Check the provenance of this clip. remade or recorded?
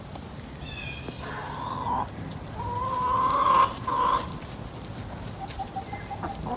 recorded